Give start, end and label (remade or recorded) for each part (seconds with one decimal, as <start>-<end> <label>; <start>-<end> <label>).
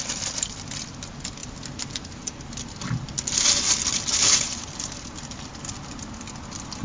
0.0-6.8 recorded